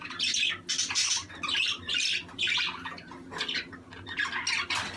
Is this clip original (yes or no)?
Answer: yes